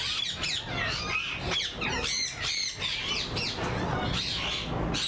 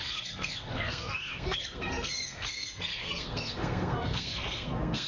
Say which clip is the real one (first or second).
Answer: first